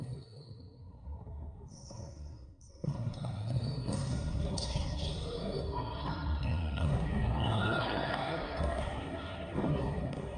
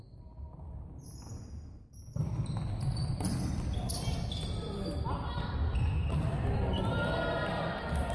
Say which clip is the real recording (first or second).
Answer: second